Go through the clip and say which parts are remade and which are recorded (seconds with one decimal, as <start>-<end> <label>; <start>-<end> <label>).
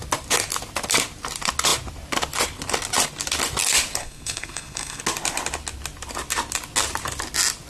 0.0-4.0 recorded; 4.0-5.0 remade; 5.0-7.7 recorded